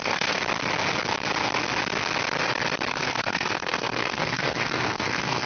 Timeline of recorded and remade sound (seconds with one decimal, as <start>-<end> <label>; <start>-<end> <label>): 0.0-0.4 remade; 0.4-2.9 recorded; 2.9-5.5 remade